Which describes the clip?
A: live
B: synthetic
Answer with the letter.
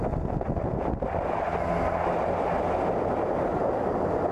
A